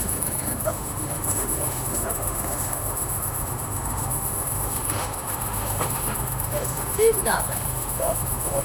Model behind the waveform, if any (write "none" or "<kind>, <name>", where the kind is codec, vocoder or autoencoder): autoencoder, DAC-VAE